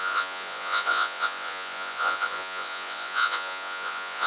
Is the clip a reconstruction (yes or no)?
yes